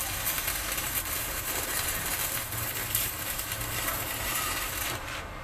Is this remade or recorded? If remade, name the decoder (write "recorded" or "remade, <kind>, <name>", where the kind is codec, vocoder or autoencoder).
remade, vocoder, BigVGAN v2